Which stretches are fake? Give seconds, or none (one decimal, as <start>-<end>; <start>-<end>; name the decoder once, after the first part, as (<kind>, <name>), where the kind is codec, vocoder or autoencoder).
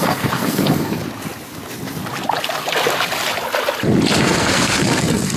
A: 0.0-1.0 (codec, SNAC); 4.2-5.4